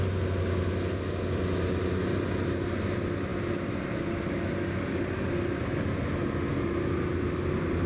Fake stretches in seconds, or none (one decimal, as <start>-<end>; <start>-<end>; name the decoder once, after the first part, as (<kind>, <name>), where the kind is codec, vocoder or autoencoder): none